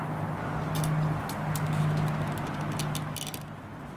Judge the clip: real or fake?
real